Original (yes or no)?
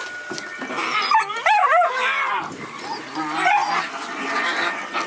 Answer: yes